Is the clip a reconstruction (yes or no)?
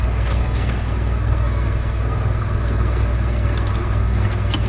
yes